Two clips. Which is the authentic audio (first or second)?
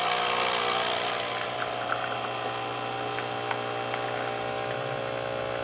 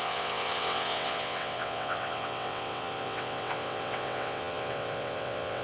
first